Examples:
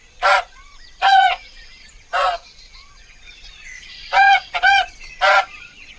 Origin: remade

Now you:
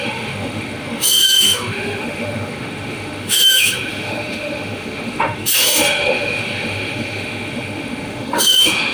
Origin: remade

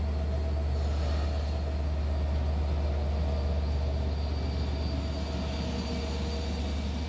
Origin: recorded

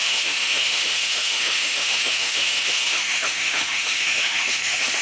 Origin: remade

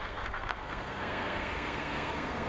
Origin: remade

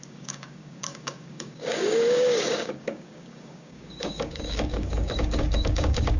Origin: remade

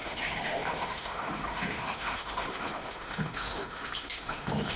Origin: remade